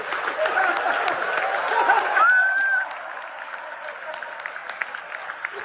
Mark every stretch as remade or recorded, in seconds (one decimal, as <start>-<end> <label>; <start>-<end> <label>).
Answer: 0.0-5.6 recorded